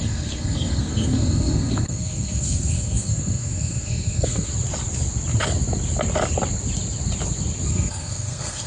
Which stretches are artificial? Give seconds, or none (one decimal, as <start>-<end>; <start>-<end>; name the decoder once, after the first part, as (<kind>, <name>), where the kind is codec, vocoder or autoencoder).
0.0-4.5 (codec, SNAC); 7.7-8.7